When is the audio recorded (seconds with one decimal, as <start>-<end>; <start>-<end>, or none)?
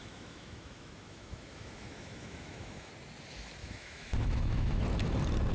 2.9-3.6; 4.8-5.5